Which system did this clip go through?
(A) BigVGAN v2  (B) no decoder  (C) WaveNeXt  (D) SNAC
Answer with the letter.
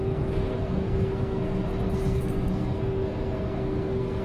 D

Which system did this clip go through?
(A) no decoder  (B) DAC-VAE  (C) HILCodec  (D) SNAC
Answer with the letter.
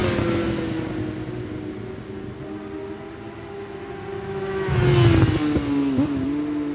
A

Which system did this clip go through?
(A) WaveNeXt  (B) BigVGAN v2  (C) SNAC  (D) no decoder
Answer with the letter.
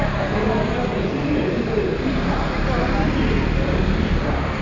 B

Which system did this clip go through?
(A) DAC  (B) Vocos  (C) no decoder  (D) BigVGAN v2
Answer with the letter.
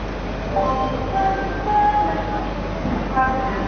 C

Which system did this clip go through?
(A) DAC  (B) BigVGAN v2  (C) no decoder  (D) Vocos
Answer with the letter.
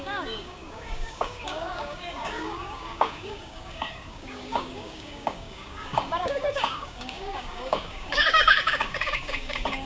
A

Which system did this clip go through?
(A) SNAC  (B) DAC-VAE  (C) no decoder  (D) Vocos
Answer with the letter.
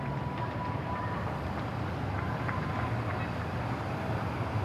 C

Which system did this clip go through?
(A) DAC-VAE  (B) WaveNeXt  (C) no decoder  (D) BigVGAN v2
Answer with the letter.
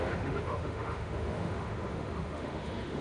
A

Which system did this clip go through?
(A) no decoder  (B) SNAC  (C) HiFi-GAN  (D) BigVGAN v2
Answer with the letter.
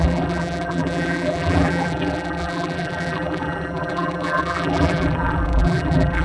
D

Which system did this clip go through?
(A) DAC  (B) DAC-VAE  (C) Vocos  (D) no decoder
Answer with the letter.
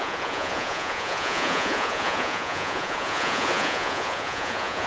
C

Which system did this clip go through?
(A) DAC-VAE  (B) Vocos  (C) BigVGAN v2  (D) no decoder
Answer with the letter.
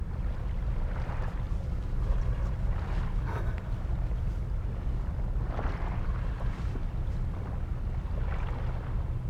D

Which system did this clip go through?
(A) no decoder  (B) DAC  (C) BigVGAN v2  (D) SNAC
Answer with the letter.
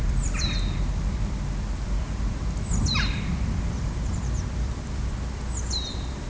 C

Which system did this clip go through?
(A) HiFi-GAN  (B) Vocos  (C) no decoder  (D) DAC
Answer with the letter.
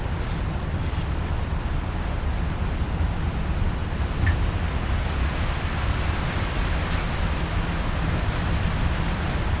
C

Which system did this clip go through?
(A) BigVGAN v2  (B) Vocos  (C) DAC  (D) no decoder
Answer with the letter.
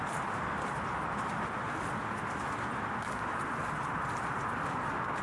D